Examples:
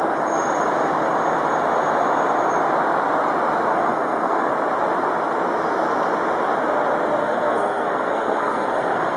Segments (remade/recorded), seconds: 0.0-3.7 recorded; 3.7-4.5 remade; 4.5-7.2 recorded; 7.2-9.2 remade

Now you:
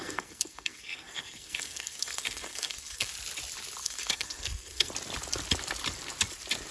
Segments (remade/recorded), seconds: 0.0-3.1 remade; 3.1-3.8 recorded; 3.8-4.9 remade; 4.9-6.7 recorded

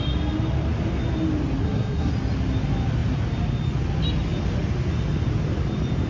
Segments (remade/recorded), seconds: 0.0-1.6 recorded; 1.6-2.1 remade; 2.1-6.1 recorded

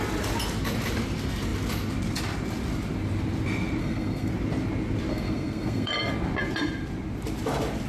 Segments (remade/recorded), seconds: 0.0-3.8 recorded; 3.8-4.3 remade; 4.3-5.1 recorded; 5.1-5.9 remade; 5.9-7.9 recorded

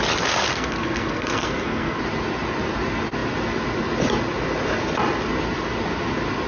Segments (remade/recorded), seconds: 0.0-0.5 recorded; 0.5-2.0 remade; 2.0-6.5 recorded

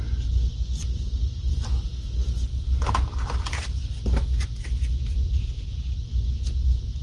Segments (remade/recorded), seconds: 0.0-7.0 recorded